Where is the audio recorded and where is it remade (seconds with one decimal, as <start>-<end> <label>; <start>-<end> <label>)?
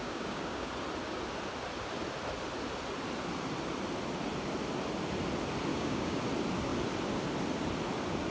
0.0-0.7 remade; 0.7-5.7 recorded; 5.7-6.2 remade; 6.2-8.3 recorded